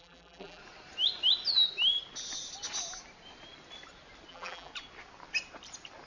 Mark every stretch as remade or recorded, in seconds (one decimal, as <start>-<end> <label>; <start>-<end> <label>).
0.0-0.6 remade; 0.6-4.3 recorded; 4.3-4.7 remade; 4.7-6.1 recorded